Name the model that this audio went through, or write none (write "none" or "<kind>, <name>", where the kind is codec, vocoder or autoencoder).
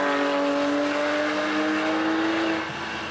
none